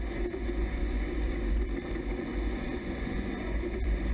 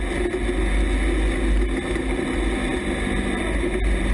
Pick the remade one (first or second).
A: first